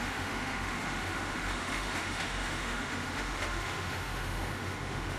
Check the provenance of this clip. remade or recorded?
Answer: remade